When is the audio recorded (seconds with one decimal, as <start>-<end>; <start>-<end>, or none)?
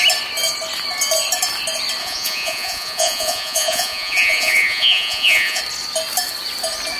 0.0-2.0; 5.6-7.0